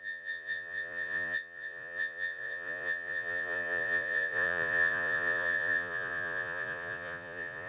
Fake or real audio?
fake